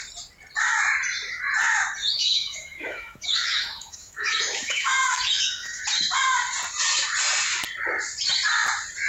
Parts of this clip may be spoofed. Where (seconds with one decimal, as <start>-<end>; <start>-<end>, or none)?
2.0-5.8